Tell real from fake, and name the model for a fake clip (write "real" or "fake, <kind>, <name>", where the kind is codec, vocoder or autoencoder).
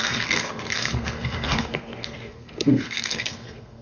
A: fake, codec, SNAC